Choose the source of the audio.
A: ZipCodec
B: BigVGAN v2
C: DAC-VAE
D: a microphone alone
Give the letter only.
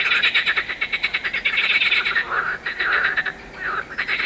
D